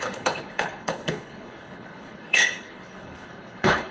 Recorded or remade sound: remade